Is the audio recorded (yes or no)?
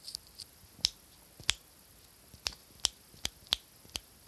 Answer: yes